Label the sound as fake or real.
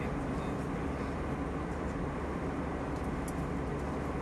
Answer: real